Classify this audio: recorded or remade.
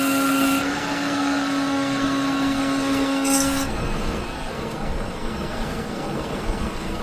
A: remade